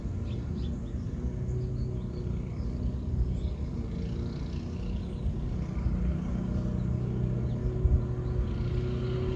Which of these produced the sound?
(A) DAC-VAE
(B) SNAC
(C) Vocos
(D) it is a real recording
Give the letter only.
D